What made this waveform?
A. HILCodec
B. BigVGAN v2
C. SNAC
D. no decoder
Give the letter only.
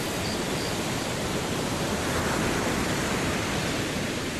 B